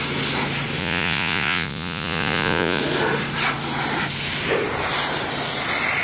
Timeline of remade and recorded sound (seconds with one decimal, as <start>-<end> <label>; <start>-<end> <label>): 0.0-0.8 recorded; 0.8-2.8 remade; 2.8-6.0 recorded